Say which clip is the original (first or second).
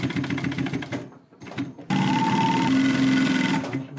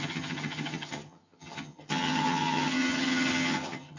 first